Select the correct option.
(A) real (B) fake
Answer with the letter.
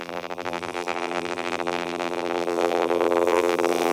B